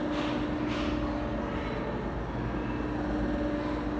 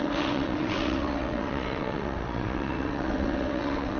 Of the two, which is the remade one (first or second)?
second